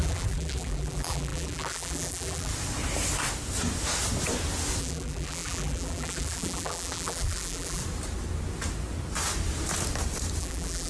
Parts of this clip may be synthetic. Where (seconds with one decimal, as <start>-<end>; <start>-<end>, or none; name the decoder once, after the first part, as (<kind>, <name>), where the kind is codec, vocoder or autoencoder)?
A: 0.0-2.5 (vocoder, BigVGAN v2); 4.8-7.8; 10.4-10.9

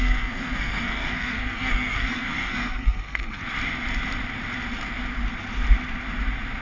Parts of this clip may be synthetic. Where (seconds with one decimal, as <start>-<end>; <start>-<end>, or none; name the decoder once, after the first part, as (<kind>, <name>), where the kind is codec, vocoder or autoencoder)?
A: 0.0-3.4 (codec, SNAC)

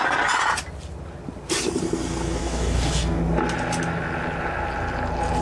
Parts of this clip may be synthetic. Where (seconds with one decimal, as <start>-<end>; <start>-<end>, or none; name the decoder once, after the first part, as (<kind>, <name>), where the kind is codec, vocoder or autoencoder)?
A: 2.4-3.2 (codec, DAC)